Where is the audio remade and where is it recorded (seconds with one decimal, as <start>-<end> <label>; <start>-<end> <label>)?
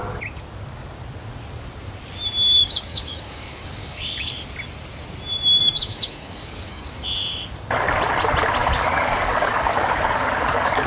0.0-2.6 recorded; 2.6-4.3 remade; 4.3-5.6 recorded; 5.6-6.9 remade; 6.9-8.6 recorded; 8.6-10.9 remade